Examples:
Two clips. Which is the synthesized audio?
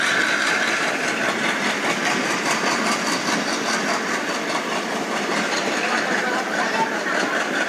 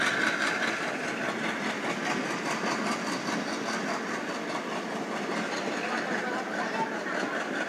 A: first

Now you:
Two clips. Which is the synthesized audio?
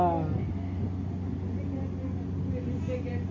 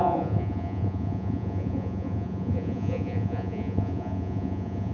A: second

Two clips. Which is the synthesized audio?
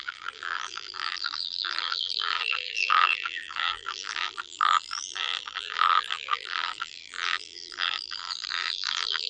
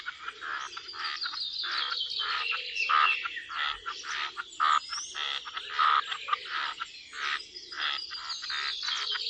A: first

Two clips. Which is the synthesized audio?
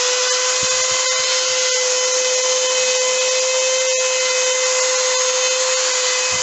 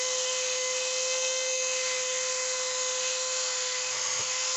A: second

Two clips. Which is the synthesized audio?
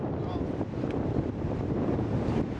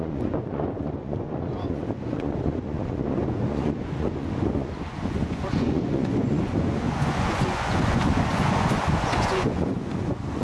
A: second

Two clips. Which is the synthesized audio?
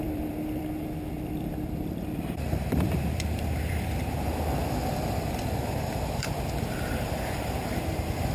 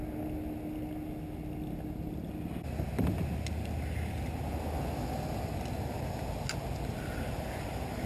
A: first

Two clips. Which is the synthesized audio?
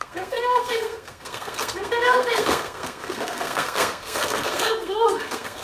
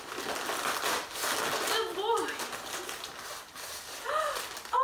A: first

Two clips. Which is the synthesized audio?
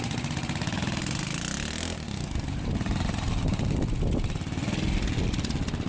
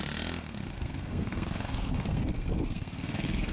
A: second